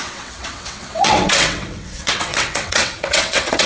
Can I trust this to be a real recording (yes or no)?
no